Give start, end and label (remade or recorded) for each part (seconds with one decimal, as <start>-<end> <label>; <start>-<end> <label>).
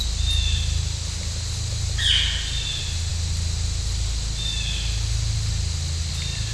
0.0-6.5 recorded